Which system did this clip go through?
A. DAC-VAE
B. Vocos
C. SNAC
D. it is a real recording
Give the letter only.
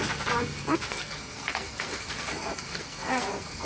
C